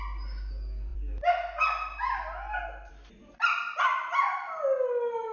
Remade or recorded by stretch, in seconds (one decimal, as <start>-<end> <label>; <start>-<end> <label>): 0.0-5.3 recorded

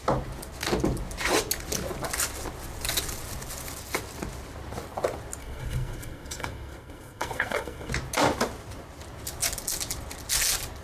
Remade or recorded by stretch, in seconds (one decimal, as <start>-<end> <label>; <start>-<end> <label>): 0.0-5.4 recorded; 5.4-7.9 remade; 7.9-10.8 recorded

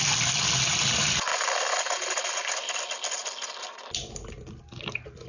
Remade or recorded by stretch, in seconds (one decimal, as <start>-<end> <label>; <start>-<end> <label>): 0.0-5.3 recorded

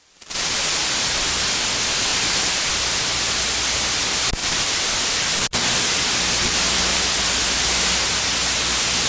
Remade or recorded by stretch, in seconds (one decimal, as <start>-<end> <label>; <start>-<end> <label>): 0.0-2.1 recorded; 2.1-2.7 remade; 2.7-4.4 recorded; 4.4-5.4 remade; 5.4-6.9 recorded; 6.9-7.8 remade; 7.8-9.1 recorded

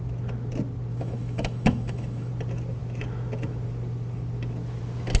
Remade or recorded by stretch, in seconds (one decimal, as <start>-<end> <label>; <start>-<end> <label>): 0.0-0.9 recorded; 0.9-2.3 remade; 2.3-5.2 recorded

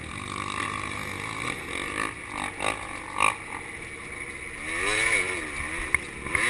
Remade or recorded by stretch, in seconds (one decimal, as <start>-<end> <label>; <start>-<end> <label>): 0.0-6.5 recorded

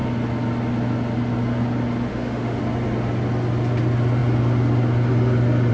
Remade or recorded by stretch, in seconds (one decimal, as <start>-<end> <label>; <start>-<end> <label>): 0.0-2.1 recorded; 2.1-2.6 remade; 2.6-5.7 recorded